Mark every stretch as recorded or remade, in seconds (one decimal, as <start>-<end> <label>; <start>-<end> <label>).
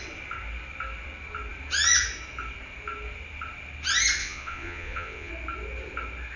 0.0-4.2 recorded; 4.2-5.3 remade; 5.3-6.4 recorded